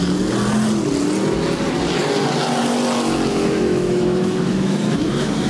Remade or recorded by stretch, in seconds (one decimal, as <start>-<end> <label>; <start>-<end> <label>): 0.0-3.3 recorded; 3.3-5.5 remade